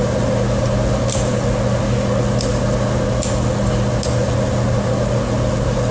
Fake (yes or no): no